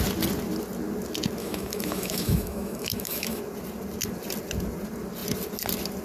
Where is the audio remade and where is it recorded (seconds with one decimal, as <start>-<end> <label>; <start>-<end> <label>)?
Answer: 0.0-1.4 recorded; 1.4-3.4 remade; 3.4-6.0 recorded